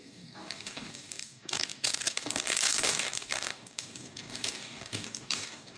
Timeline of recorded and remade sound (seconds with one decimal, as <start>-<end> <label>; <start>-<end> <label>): 0.0-5.8 remade